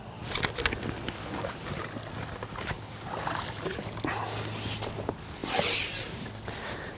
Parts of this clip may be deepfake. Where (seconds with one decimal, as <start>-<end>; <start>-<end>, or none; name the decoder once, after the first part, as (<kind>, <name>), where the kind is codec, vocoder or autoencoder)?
5.4-6.2 (vocoder, BigVGAN v2)